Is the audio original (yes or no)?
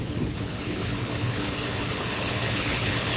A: no